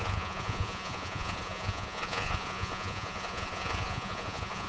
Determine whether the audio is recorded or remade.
remade